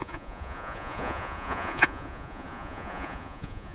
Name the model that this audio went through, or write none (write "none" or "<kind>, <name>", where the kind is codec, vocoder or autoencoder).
vocoder, Vocos